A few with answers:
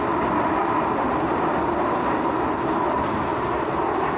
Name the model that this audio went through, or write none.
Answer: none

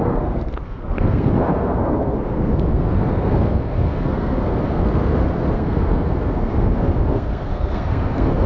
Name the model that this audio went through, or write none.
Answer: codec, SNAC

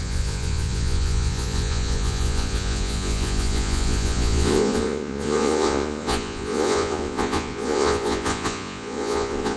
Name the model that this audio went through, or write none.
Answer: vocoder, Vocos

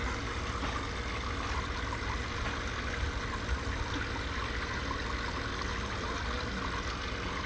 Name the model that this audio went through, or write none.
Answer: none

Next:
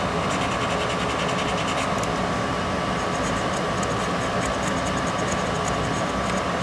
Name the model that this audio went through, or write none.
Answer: none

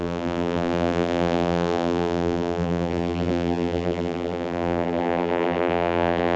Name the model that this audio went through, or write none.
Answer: vocoder, BigVGAN v2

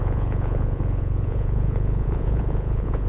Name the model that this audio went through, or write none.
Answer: vocoder, Vocos